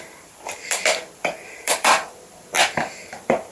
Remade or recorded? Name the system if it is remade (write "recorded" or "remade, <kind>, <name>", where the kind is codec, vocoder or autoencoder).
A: remade, vocoder, BigVGAN v2